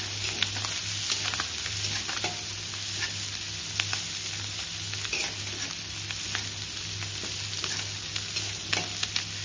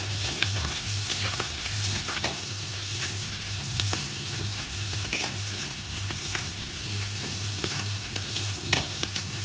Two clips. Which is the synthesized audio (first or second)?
second